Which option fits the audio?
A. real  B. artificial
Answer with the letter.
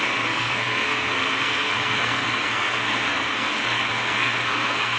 B